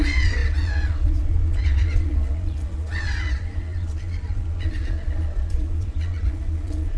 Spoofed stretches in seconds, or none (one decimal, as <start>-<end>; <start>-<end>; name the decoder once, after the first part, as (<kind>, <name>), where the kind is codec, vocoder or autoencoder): 0.0-7.0 (vocoder, Vocos)